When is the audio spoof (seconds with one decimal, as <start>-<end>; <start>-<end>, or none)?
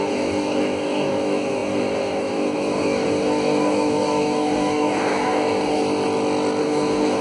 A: 0.0-5.8; 6.6-7.2